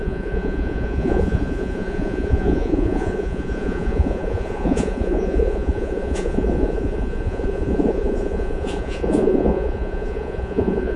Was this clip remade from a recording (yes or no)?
yes